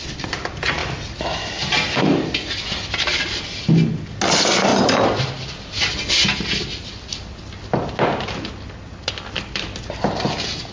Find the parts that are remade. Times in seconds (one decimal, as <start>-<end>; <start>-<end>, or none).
none